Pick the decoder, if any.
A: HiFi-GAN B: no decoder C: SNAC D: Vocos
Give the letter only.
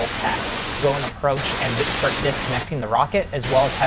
D